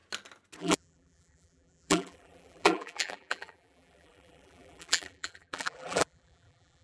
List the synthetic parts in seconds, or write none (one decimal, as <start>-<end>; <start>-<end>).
0.6-6.8